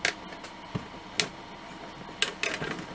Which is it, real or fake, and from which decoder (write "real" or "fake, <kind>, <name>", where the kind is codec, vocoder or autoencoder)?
real